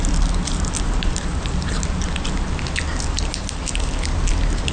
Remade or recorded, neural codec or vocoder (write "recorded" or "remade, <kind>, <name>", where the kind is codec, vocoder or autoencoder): recorded